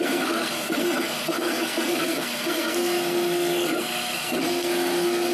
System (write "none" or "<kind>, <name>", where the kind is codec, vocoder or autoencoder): codec, SNAC